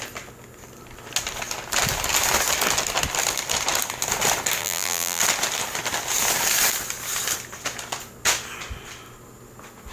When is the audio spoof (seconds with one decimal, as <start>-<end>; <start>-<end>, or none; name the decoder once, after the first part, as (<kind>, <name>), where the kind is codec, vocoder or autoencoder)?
4.6-5.2 (vocoder, BigVGAN v2)